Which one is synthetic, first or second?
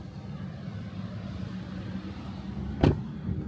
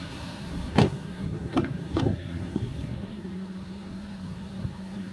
second